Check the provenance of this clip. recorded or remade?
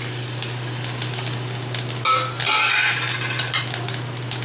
recorded